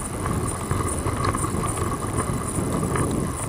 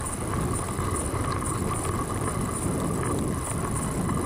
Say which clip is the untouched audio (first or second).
first